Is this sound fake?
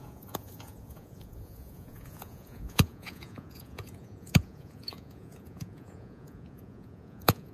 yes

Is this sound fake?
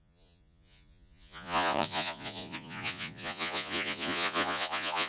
yes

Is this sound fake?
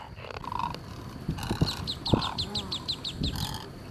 no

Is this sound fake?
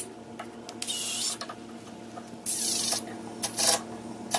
no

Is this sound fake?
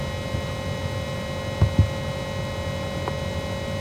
no